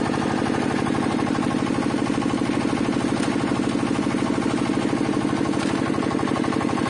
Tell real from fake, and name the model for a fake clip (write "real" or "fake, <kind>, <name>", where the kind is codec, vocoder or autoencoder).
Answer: real